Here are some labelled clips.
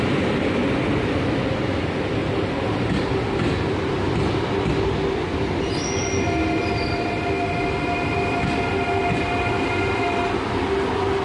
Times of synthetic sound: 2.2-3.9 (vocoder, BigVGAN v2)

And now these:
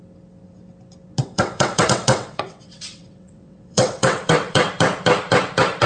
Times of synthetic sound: 1.2-4.7 (vocoder, WaveNeXt)

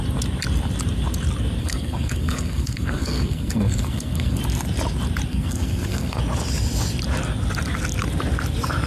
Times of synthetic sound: 1.6-4.4 (codec, SNAC); 5.3-6.2

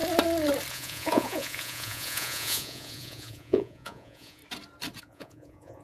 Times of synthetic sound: 0.7-4.4 (vocoder, Vocos); 5.0-5.8

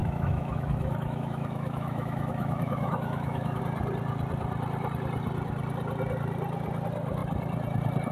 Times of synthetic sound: 0.0-3.6 (autoencoder, DAC-VAE)

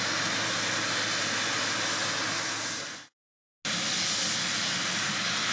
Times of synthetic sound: none

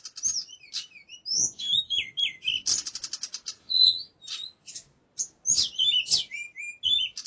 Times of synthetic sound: 3.6-4.1 (vocoder, Vocos)